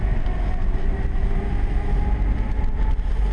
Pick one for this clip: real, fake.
real